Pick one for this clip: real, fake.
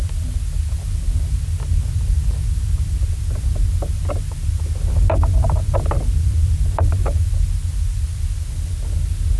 real